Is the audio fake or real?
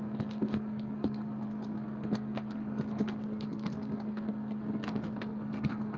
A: fake